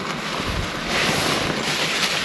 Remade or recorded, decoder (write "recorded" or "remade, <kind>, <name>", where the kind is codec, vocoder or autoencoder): recorded